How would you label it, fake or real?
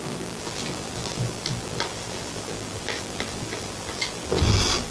fake